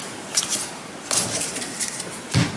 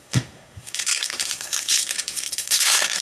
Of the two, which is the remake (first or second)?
second